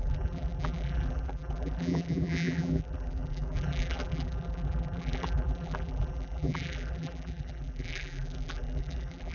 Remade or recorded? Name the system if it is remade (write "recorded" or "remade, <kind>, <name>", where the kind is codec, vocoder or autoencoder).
remade, vocoder, BigVGAN v2